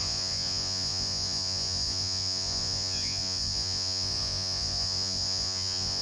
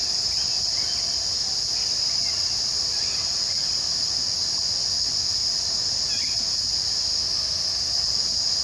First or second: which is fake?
first